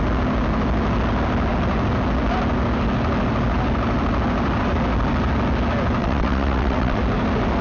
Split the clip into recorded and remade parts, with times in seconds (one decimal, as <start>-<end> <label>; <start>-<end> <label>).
0.0-6.0 recorded; 6.0-7.0 remade; 7.0-7.6 recorded